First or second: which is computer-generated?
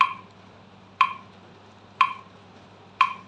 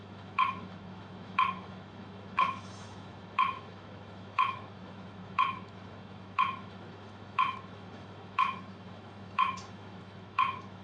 second